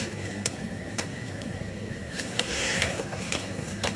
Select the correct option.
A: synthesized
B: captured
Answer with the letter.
A